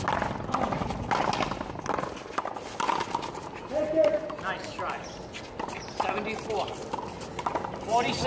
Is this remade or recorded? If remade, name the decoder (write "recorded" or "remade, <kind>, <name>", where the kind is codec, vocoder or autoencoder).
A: recorded